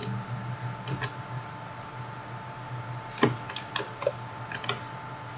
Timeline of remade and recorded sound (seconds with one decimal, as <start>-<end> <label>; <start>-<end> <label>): 0.0-5.4 recorded